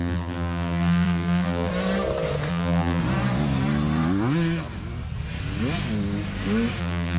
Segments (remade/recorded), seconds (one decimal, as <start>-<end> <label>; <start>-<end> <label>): 0.0-1.7 remade; 1.7-2.5 recorded; 2.5-3.0 remade; 3.0-6.8 recorded; 6.8-7.2 remade